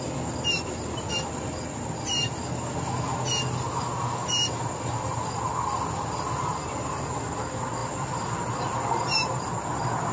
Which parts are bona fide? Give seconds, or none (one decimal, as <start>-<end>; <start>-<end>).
0.0-10.1